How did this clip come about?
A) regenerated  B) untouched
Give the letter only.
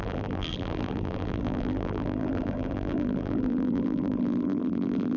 A